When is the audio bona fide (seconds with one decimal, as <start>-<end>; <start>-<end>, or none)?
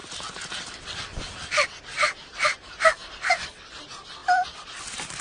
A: 1.8-3.0; 3.5-4.2; 4.8-5.2